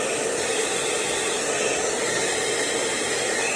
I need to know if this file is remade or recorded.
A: recorded